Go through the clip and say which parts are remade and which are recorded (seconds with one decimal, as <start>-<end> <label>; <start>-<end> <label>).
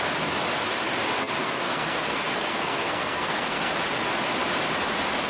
0.0-1.4 recorded; 1.4-3.7 remade; 3.7-5.3 recorded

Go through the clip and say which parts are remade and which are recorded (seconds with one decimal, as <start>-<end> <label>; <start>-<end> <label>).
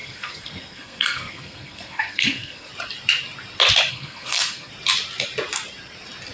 0.0-2.7 remade; 2.7-3.9 recorded; 3.9-4.7 remade; 4.7-6.3 recorded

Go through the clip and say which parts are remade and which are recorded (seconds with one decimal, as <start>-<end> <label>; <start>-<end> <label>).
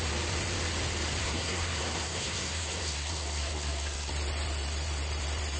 0.0-1.2 recorded; 1.2-4.1 remade; 4.1-5.6 recorded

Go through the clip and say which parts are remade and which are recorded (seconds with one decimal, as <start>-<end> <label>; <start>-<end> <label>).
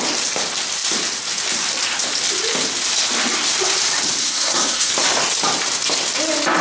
0.0-4.2 recorded; 4.2-4.9 remade; 4.9-6.6 recorded